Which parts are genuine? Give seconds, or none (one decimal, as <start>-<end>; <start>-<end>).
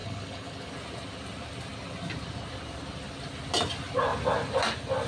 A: 0.7-5.1